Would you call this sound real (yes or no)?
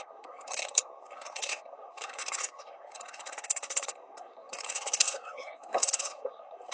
no